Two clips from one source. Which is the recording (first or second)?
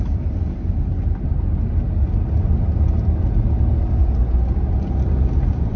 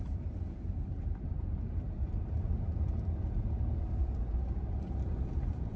first